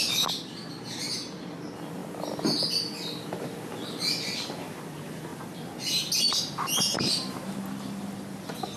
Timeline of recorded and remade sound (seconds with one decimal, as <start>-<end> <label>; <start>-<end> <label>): 0.0-8.8 recorded